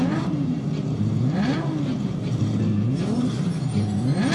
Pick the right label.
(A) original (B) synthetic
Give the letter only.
B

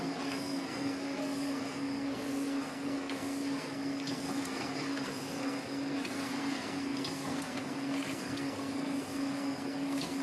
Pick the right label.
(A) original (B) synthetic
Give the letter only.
B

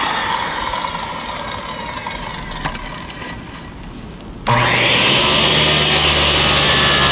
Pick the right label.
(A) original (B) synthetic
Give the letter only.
A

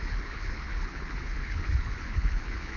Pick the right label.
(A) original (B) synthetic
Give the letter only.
B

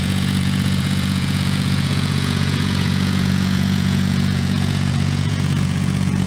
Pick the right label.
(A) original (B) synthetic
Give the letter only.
B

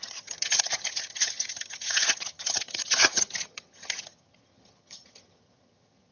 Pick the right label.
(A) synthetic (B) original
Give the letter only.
A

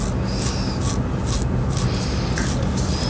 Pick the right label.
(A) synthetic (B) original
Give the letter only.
B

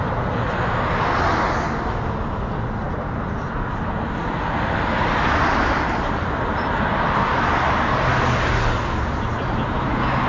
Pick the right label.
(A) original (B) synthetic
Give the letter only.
A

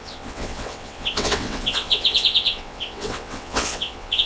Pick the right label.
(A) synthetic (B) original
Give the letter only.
A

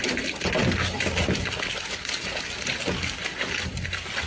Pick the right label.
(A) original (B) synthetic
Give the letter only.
A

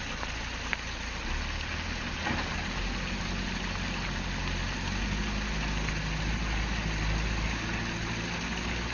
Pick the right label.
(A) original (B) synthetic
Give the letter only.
A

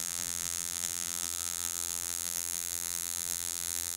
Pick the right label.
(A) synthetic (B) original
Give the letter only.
A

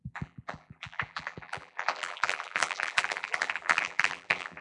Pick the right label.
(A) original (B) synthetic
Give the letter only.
B